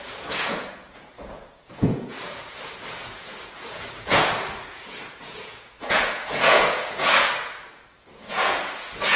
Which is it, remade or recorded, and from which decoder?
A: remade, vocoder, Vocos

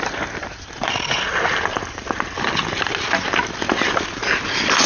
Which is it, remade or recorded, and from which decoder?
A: recorded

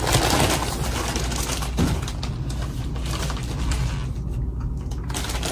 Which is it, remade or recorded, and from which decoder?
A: recorded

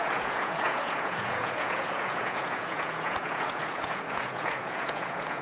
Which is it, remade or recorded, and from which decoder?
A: remade, vocoder, Vocos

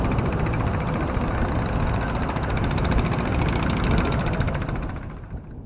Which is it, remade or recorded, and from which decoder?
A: recorded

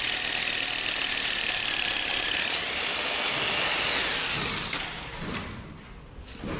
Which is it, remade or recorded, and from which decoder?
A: recorded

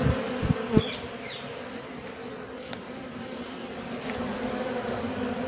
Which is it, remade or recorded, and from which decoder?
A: recorded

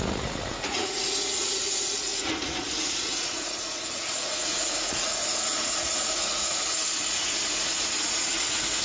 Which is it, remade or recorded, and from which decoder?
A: remade, vocoder, Vocos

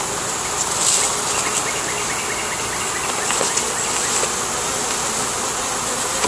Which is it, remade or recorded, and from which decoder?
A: recorded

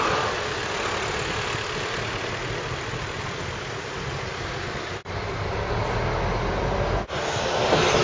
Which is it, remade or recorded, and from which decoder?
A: recorded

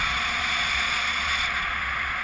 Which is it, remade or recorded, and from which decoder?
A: remade, vocoder, Vocos